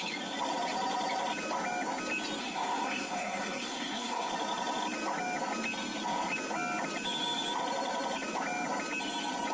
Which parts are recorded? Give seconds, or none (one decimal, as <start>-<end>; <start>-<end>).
0.0-2.4; 4.3-9.5